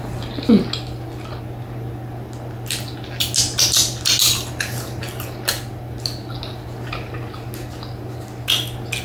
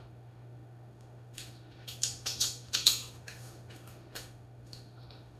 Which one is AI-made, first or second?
second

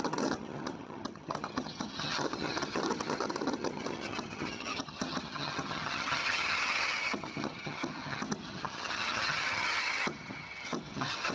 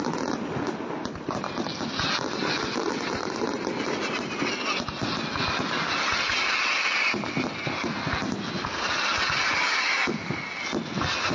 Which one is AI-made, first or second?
first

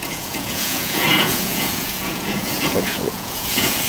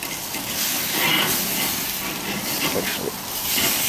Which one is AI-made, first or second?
first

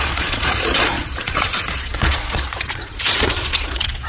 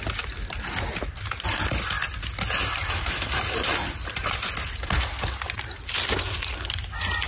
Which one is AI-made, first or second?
first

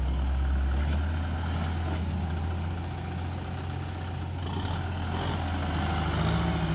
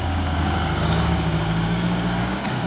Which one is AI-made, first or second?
second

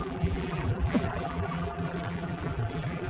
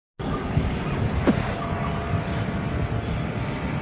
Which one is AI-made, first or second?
first